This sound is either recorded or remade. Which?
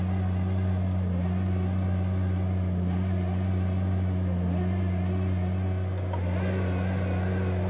recorded